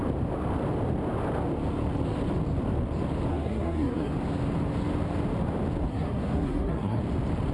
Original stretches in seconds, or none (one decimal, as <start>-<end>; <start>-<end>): 0.0-3.3; 4.1-5.9; 7.0-7.5